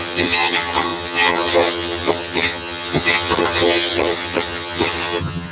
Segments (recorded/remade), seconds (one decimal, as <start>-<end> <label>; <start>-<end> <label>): 0.0-5.5 remade